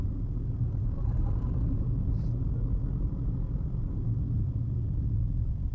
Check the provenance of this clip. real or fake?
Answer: real